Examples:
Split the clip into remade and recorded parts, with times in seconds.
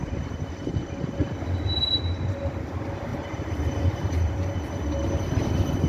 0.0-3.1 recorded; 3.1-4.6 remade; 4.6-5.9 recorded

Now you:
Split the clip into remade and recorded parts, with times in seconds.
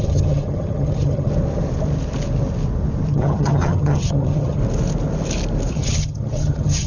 0.0-1.3 remade; 1.3-3.1 recorded; 3.1-4.6 remade; 4.6-5.7 recorded; 5.7-6.9 remade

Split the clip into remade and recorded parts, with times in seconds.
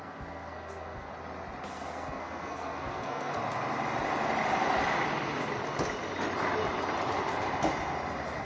0.0-1.1 remade; 1.1-1.7 recorded; 1.7-3.4 remade; 3.4-8.4 recorded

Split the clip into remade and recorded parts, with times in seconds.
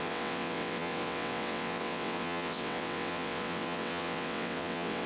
0.0-5.1 remade